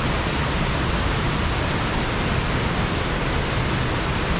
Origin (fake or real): real